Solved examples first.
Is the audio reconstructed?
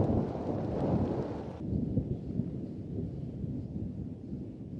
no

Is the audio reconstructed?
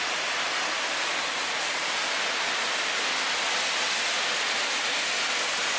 no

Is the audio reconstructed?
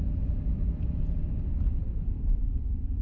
no